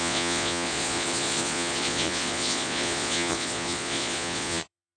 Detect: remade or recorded remade